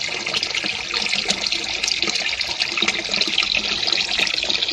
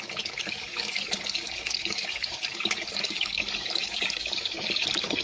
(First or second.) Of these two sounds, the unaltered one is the first